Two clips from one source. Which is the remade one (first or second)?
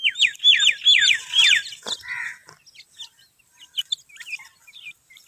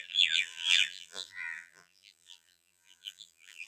second